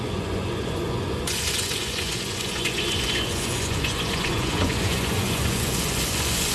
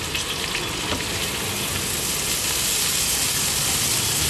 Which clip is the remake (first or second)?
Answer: first